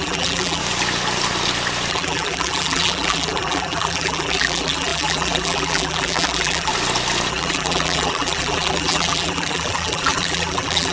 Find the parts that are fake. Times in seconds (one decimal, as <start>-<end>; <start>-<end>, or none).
0.0-0.6; 1.9-6.7; 7.3-10.9